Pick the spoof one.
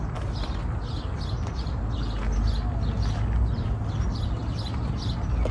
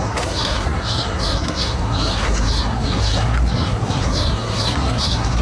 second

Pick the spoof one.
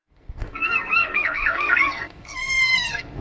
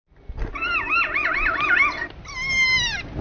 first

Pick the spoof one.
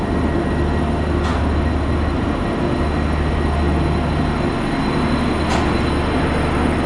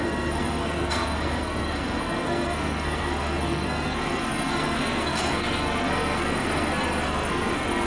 second